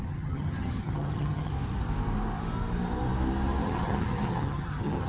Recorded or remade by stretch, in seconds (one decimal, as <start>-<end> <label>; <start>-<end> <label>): 0.0-1.5 remade; 1.5-3.6 recorded; 3.6-5.1 remade